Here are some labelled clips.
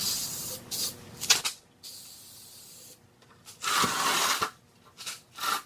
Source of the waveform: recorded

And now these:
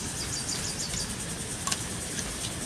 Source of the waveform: recorded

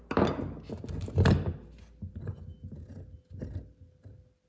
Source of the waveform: recorded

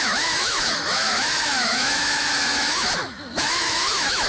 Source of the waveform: remade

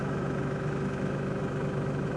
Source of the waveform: remade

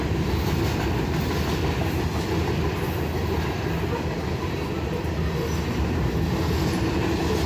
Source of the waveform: recorded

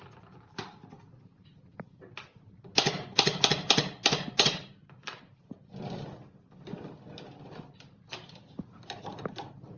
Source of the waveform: recorded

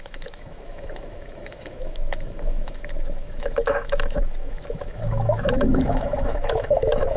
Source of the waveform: remade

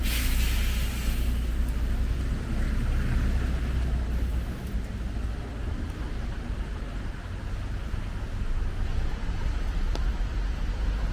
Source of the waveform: recorded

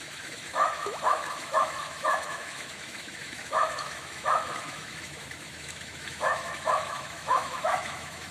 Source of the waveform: remade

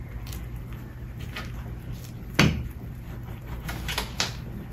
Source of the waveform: recorded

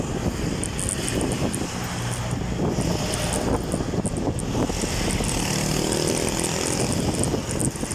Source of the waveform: recorded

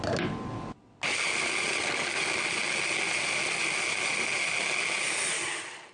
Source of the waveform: recorded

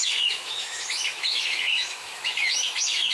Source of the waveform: remade